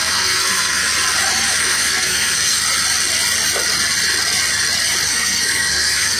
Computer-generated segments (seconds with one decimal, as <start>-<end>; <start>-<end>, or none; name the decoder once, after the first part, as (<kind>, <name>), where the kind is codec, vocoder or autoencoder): 0.0-0.8 (codec, SNAC); 1.6-2.6; 5.1-6.2